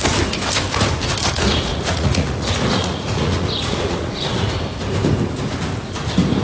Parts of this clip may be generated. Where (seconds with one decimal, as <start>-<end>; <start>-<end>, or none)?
1.7-4.5